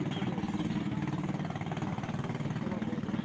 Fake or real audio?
real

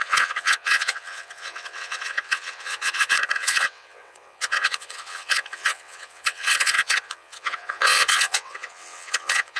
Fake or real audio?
fake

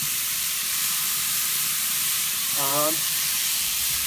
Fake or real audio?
fake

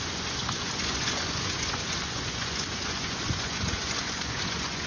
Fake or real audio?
fake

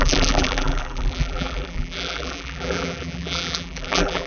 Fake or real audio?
fake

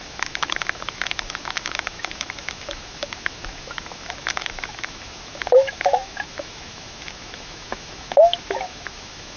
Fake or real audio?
fake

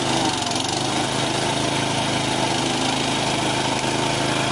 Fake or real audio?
real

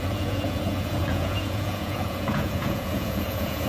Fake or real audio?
fake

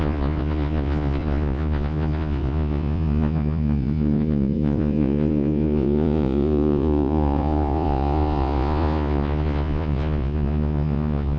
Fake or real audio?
fake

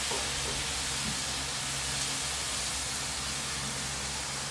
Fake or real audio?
real